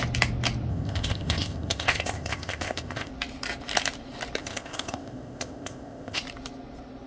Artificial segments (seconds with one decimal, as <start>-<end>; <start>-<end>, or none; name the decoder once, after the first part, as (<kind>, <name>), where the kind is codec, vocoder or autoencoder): 0.7-3.1 (codec, ZipCodec); 4.4-6.2